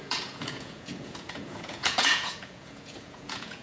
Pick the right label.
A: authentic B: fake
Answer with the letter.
B